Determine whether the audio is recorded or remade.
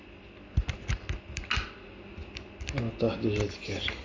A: recorded